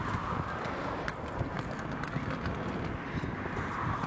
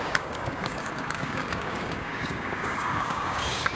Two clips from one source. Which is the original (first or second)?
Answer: first